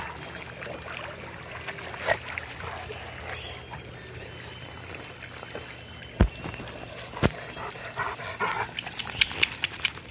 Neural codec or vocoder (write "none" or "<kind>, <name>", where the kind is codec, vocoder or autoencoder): none